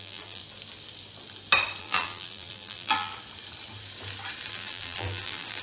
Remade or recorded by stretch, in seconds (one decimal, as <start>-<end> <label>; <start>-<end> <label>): 0.0-0.4 remade; 0.4-1.8 recorded; 1.8-3.1 remade; 3.1-4.5 recorded; 4.5-5.6 remade